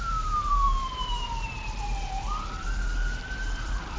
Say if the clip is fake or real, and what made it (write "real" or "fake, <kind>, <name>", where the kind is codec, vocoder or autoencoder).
fake, vocoder, BigVGAN v2